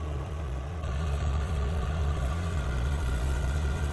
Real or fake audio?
fake